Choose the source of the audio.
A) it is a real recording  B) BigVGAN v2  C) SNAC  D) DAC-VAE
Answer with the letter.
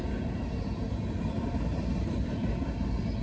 A